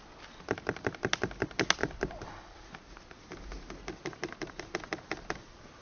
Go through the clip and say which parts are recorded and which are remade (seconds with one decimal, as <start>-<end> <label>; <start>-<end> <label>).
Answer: 0.0-5.8 recorded